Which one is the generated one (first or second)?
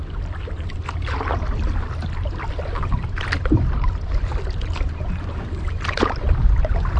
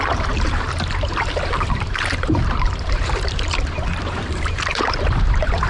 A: second